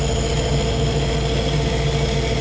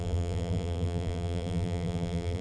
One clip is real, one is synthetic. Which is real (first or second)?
first